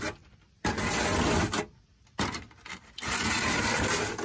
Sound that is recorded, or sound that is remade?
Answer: recorded